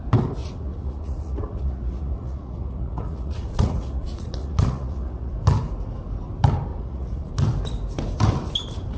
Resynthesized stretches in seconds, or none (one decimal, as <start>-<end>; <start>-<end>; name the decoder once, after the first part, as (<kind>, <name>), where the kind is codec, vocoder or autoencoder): 0.4-5.3 (vocoder, Vocos); 6.7-7.3